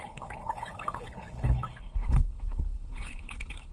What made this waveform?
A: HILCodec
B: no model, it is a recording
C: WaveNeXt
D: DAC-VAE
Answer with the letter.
A